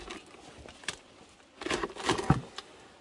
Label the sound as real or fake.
real